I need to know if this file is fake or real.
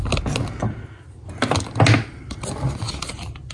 real